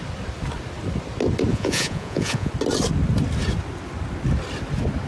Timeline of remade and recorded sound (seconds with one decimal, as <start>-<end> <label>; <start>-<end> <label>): 0.0-1.5 recorded; 1.5-2.5 remade; 2.5-5.1 recorded